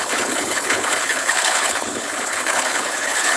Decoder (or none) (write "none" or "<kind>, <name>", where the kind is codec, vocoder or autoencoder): codec, HILCodec